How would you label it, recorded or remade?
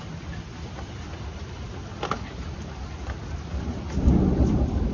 recorded